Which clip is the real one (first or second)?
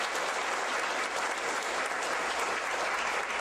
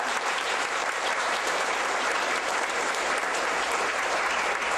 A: first